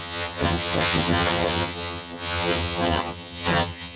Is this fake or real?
fake